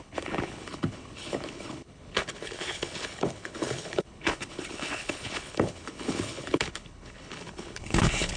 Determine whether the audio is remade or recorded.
remade